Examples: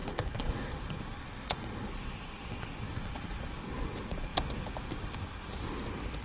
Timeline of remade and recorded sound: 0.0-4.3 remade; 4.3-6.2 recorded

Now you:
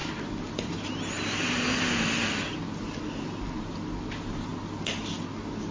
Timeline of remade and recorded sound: 0.0-5.7 recorded

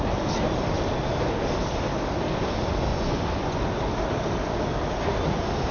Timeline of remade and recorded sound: 0.0-2.9 recorded; 2.9-3.6 remade; 3.6-5.7 recorded